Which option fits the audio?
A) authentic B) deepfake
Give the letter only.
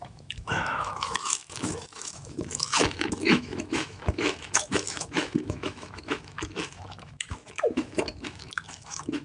B